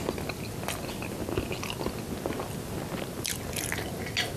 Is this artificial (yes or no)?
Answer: no